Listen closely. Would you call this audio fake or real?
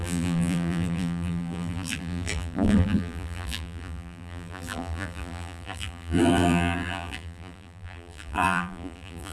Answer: fake